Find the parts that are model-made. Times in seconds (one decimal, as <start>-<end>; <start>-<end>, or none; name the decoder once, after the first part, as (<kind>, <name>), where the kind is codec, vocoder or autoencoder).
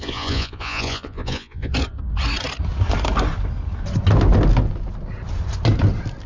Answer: 0.0-1.7 (vocoder, Vocos)